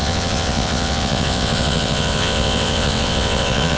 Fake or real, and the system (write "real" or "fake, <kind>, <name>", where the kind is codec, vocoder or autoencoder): fake, vocoder, WaveNeXt